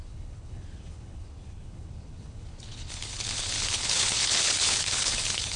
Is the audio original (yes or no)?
no